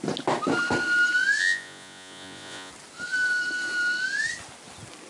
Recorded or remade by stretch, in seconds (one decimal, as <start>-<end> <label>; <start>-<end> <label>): 0.0-1.4 recorded; 1.4-2.7 remade; 2.7-5.1 recorded